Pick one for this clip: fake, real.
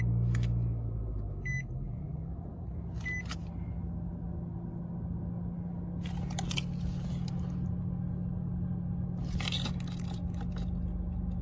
real